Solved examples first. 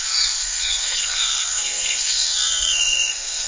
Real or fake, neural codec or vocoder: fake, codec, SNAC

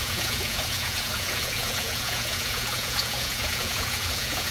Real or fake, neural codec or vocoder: fake, vocoder, Vocos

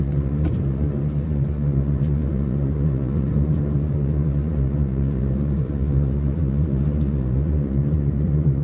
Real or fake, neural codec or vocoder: fake, vocoder, Vocos